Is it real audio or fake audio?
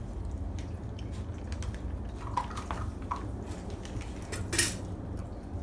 real